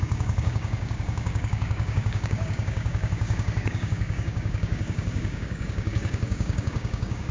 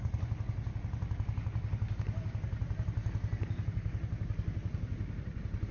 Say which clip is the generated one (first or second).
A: first